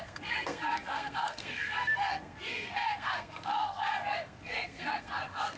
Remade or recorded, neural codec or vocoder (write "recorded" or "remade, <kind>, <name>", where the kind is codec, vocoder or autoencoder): remade, codec, SNAC